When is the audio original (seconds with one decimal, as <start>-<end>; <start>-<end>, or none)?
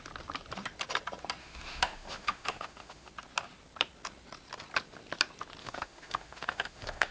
0.0-1.4; 3.1-5.6